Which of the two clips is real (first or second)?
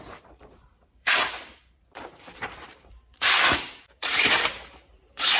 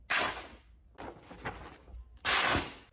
second